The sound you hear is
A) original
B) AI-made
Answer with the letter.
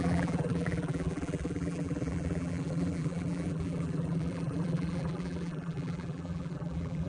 B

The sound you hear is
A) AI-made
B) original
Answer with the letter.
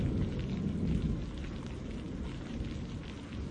B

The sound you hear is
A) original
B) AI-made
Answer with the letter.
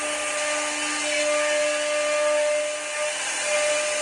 A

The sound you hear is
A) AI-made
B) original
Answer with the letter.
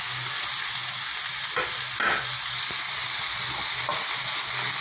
B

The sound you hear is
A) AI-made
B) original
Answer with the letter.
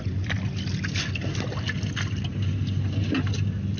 B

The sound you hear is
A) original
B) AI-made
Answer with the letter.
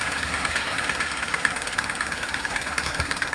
B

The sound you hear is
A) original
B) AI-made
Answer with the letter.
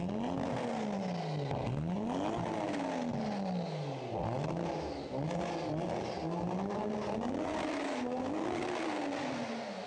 A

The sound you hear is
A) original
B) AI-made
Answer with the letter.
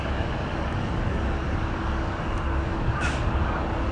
B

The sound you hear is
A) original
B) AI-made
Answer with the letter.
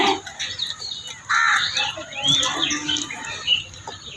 A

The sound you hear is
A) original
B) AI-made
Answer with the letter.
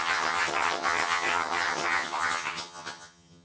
B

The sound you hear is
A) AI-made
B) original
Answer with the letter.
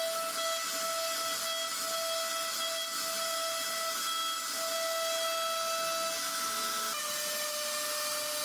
B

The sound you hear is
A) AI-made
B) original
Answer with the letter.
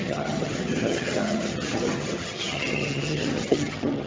A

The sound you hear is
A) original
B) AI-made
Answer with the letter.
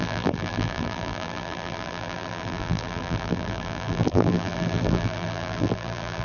B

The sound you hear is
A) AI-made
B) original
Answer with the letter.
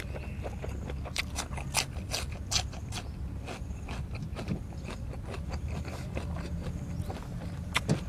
B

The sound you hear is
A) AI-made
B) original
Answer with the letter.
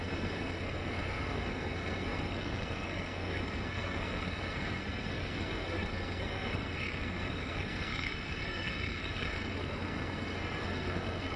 A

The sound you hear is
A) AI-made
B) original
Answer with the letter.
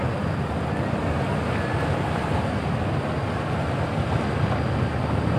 B